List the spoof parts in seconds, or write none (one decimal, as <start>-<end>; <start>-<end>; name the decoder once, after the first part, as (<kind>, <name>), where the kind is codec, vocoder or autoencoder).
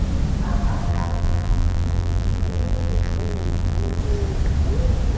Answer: 0.9-4.0 (vocoder, BigVGAN v2)